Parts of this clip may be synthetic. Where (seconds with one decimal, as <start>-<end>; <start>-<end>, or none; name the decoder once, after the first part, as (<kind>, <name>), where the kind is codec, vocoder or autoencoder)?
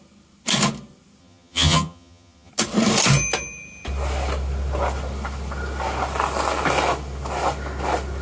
1.2-2.5 (vocoder, HiFi-GAN)